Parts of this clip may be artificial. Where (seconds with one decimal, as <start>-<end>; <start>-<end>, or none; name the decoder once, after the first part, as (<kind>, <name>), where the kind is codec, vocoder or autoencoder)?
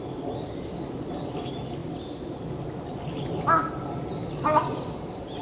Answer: none